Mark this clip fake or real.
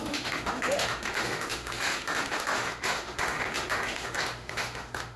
fake